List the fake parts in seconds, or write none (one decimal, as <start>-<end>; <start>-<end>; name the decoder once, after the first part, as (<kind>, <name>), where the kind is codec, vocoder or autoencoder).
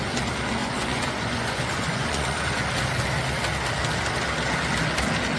0.6-2.7 (vocoder, Vocos)